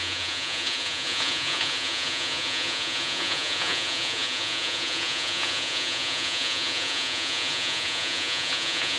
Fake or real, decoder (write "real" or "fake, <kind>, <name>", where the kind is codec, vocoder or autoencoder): fake, vocoder, Vocos